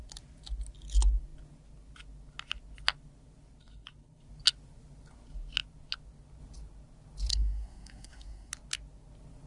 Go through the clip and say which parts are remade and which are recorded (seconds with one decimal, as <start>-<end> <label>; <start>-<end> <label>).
0.0-7.3 recorded; 7.3-8.5 remade; 8.5-9.5 recorded